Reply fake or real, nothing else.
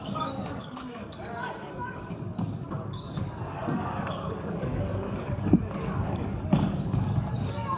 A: fake